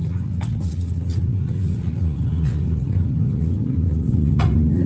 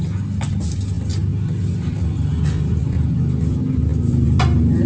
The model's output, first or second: first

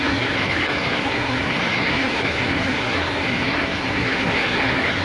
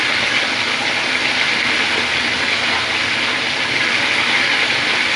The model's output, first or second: first